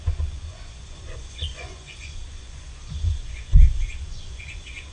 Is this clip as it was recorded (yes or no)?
no